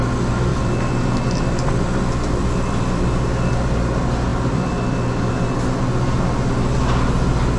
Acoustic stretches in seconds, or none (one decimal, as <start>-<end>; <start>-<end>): 0.0-0.5; 1.7-4.3; 5.3-7.6